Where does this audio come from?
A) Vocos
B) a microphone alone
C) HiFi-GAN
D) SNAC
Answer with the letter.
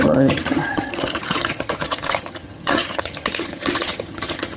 C